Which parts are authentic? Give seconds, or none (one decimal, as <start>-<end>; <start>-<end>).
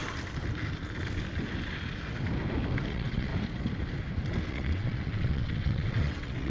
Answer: 0.0-2.9; 3.3-4.5